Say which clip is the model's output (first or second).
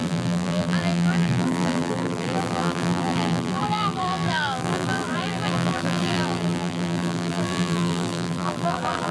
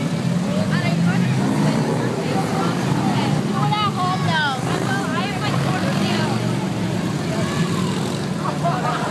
first